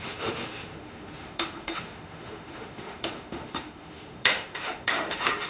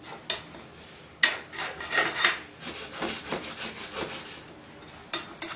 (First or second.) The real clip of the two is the second